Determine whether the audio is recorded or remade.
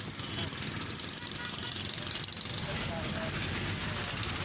recorded